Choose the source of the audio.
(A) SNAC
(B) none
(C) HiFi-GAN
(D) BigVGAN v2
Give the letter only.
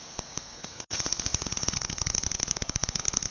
A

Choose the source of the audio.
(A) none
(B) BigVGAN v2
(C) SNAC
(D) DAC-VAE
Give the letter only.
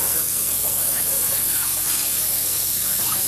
C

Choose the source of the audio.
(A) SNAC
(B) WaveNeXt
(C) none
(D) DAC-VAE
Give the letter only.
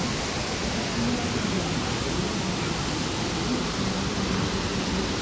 C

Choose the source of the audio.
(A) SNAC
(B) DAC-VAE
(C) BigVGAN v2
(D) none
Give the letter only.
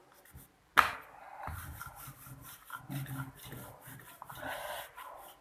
D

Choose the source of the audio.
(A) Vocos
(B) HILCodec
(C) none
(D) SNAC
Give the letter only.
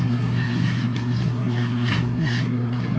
D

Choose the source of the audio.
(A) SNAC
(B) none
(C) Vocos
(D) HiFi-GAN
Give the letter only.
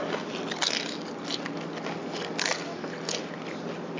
B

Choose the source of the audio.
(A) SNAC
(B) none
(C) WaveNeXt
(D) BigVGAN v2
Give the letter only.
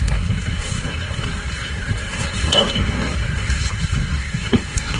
A